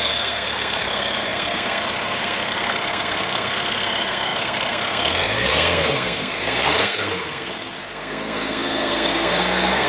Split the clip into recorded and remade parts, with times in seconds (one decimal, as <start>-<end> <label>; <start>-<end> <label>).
0.0-9.9 remade